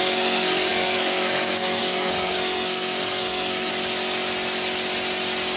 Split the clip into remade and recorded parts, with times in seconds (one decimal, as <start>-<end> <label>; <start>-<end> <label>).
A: 0.0-3.7 remade; 3.7-5.6 recorded